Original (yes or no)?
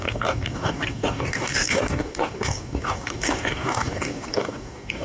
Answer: no